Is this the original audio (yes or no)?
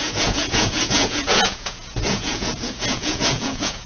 no